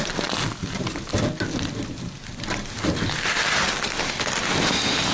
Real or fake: real